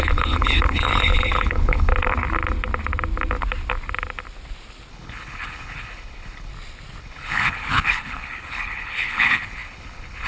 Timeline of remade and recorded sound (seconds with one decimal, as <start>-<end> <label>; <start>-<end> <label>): 0.0-1.9 remade; 1.9-4.9 recorded; 4.9-6.5 remade; 6.5-7.0 recorded; 7.0-10.3 remade